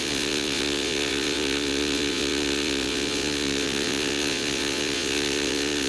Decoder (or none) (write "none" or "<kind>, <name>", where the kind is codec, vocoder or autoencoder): vocoder, WaveNeXt